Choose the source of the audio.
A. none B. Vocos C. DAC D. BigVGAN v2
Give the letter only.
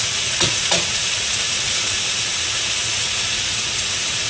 B